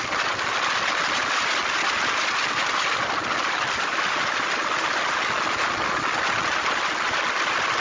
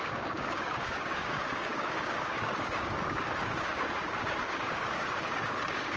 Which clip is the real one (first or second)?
first